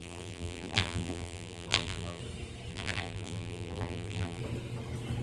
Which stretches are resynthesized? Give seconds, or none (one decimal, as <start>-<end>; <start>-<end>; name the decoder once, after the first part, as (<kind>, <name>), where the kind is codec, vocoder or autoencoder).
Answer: 0.0-2.2 (vocoder, BigVGAN v2); 2.7-4.4